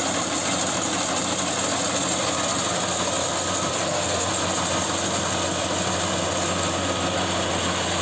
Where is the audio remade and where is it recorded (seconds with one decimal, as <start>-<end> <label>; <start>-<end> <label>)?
0.0-3.7 recorded; 3.7-4.3 remade; 4.3-8.0 recorded